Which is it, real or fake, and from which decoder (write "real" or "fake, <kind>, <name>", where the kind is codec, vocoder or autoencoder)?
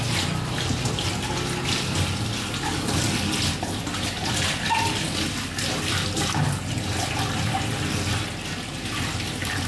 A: real